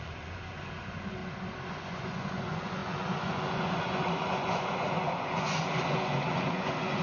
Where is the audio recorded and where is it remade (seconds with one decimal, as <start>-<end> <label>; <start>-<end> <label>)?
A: 0.0-1.2 remade; 1.2-1.7 recorded; 1.7-7.0 remade